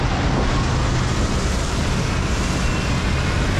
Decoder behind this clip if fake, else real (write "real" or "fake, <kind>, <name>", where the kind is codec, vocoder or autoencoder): real